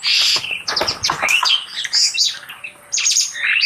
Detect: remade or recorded recorded